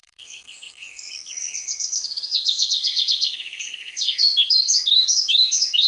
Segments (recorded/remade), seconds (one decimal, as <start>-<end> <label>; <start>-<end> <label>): 0.0-5.9 remade